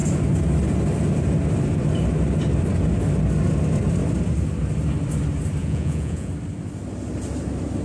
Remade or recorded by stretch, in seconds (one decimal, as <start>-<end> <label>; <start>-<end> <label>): 0.0-5.6 recorded; 5.6-6.3 remade; 6.3-7.8 recorded